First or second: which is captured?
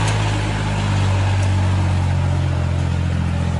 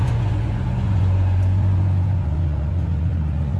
first